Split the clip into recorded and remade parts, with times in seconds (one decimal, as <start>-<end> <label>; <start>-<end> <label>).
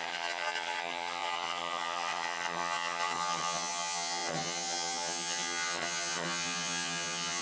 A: 0.0-7.4 remade